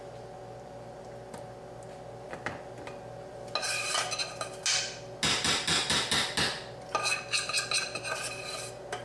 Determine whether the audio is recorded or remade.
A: recorded